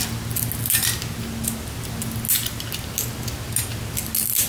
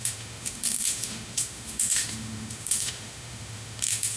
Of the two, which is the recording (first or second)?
first